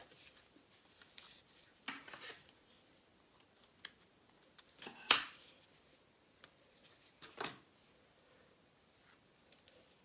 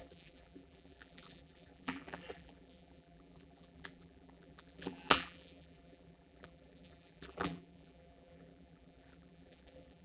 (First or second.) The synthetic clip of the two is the second